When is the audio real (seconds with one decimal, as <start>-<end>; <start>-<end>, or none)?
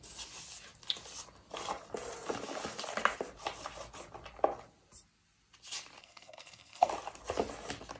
0.0-6.0; 6.9-8.0